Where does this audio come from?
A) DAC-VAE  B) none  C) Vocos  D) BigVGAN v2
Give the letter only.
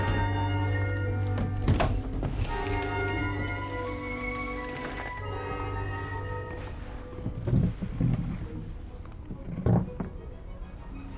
B